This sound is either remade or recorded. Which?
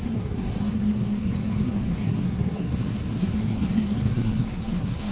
remade